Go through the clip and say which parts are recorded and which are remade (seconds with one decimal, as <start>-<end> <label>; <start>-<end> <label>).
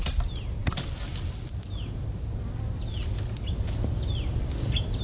0.0-5.0 recorded